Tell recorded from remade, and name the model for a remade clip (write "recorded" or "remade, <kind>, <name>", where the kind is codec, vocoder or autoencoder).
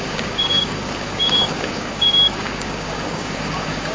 remade, codec, DAC